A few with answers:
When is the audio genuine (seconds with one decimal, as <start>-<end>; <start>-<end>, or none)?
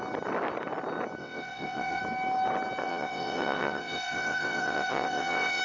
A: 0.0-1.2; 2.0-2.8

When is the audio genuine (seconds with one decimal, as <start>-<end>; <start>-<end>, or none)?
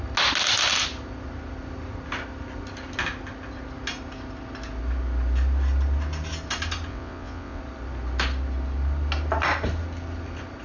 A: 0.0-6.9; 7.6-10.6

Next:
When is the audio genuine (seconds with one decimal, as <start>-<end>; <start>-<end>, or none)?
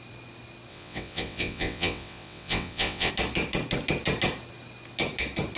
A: 0.0-0.7; 3.1-5.6